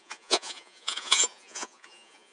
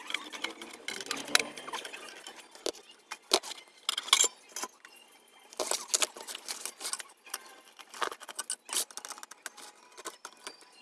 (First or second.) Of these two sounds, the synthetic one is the first